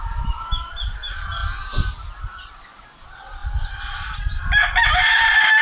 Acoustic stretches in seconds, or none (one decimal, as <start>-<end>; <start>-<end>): 0.0-5.6